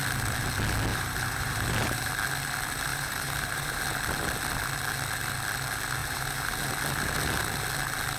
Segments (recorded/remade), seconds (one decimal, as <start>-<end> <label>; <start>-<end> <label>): 0.0-0.9 recorded; 0.9-2.1 remade; 2.1-2.9 recorded; 2.9-3.8 remade; 3.8-6.0 recorded; 6.0-6.7 remade; 6.7-8.2 recorded